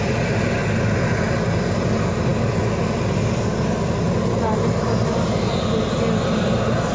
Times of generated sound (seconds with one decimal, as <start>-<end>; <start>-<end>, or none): none